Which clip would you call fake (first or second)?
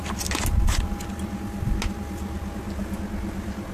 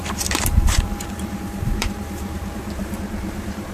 second